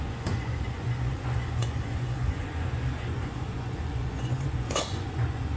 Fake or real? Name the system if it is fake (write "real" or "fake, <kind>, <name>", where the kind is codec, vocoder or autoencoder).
fake, vocoder, Vocos